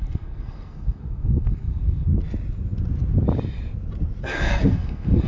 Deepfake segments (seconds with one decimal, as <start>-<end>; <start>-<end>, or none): 0.0-2.1; 4.2-5.3